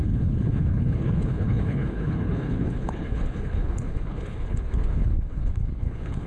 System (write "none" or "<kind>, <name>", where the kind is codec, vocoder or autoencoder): codec, HILCodec